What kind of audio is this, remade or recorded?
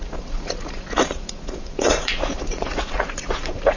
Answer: remade